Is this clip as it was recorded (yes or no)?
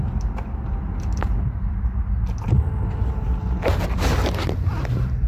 yes